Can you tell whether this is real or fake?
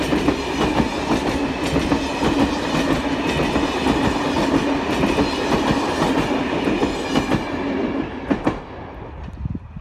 real